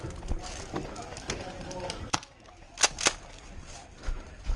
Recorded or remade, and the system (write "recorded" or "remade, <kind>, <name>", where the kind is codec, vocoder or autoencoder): recorded